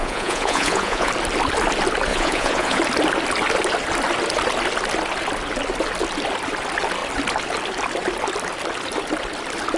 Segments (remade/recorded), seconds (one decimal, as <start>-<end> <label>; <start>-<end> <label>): 0.0-1.1 remade; 1.1-2.1 recorded; 2.1-2.8 remade; 2.8-9.8 recorded